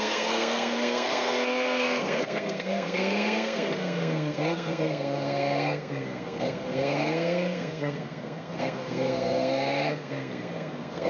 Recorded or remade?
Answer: remade